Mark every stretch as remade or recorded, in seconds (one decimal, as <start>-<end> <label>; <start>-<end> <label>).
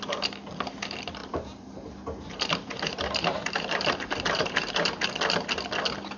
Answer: 0.0-1.2 recorded; 1.2-4.9 remade; 4.9-6.2 recorded